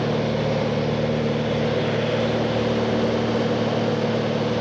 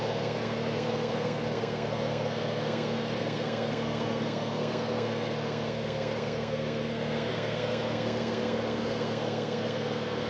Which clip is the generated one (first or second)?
second